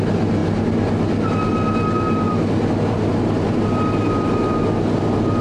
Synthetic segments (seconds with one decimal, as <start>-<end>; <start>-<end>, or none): none